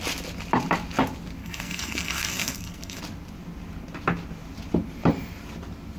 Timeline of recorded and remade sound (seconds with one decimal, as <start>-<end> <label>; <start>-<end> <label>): 0.0-1.4 recorded; 1.4-3.0 remade; 3.0-6.0 recorded